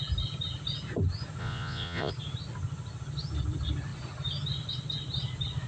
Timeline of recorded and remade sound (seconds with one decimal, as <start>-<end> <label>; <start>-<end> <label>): 0.0-1.4 recorded; 1.4-2.1 remade; 2.1-5.7 recorded